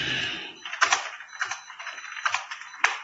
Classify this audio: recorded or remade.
remade